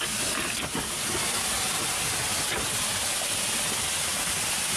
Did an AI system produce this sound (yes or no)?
no